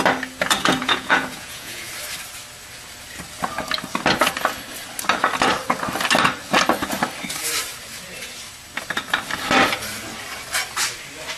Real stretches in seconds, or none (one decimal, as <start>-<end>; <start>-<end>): 0.0-0.8; 1.9-11.4